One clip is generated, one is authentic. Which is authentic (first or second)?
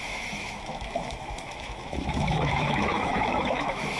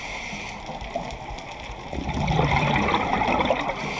second